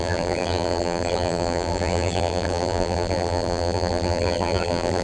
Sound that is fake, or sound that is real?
fake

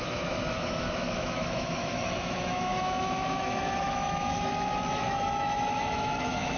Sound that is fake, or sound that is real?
fake